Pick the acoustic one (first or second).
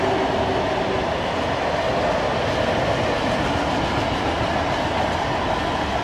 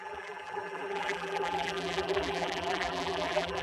first